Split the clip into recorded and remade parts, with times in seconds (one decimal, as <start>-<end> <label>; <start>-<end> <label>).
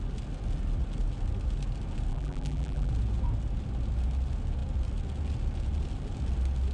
0.0-2.1 recorded; 2.1-2.9 remade; 2.9-6.7 recorded